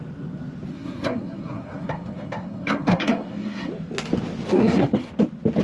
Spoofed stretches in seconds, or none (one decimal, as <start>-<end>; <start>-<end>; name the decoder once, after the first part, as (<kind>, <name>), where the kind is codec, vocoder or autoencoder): 0.7-3.7 (codec, SNAC); 4.5-5.1